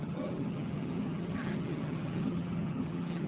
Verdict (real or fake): fake